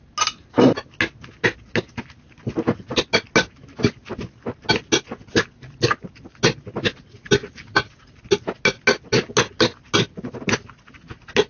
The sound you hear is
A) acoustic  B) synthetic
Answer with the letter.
A